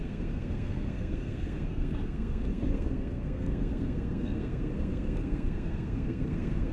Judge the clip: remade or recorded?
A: remade